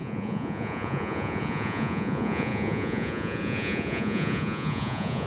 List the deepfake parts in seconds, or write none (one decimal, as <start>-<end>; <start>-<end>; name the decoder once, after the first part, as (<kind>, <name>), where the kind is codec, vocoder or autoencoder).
0.0-5.3 (vocoder, Vocos)